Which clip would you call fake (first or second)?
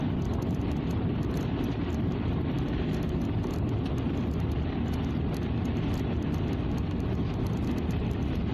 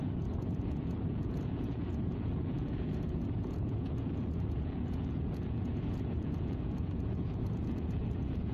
second